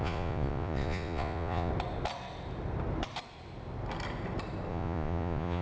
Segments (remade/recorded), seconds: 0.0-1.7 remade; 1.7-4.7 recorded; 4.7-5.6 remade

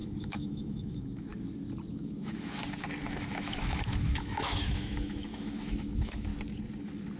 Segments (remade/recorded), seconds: 0.0-1.3 remade; 1.3-1.9 recorded; 1.9-2.6 remade; 2.6-3.2 recorded; 3.2-6.3 remade; 6.3-7.2 recorded

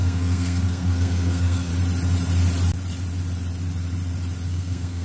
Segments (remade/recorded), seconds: 0.0-1.7 remade; 1.7-4.5 recorded; 4.5-5.0 remade

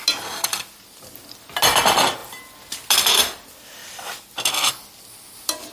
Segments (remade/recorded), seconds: 0.0-5.7 recorded

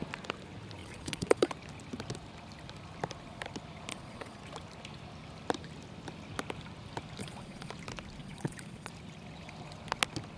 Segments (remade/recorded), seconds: 0.0-0.8 recorded; 0.8-1.5 remade; 1.5-3.9 recorded; 3.9-4.4 remade; 4.4-7.2 recorded; 7.2-7.7 remade; 7.7-8.2 recorded; 8.2-8.9 remade; 8.9-10.4 recorded

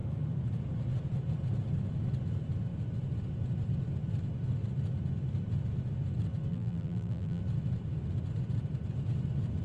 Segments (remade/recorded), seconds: 0.0-6.5 recorded; 6.5-7.4 remade; 7.4-9.6 recorded